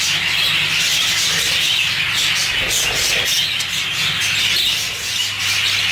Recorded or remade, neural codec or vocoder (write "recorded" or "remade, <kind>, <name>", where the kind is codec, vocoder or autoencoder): recorded